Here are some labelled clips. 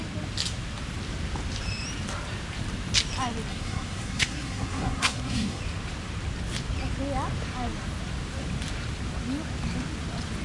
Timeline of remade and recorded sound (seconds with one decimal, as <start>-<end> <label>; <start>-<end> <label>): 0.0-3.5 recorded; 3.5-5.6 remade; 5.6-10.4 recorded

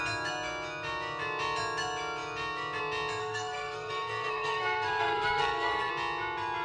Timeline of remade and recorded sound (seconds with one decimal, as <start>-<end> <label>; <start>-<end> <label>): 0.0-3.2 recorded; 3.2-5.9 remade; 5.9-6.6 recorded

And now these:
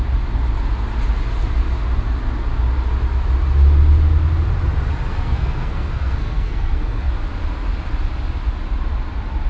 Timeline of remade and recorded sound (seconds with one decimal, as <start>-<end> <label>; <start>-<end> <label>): 0.0-5.1 recorded; 5.1-7.1 remade; 7.1-9.5 recorded

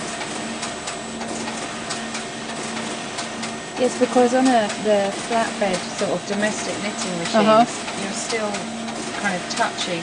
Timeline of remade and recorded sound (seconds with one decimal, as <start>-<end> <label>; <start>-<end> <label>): 0.0-10.0 recorded